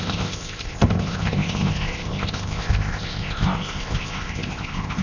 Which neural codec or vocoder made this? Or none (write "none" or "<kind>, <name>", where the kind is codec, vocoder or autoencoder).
codec, ZipCodec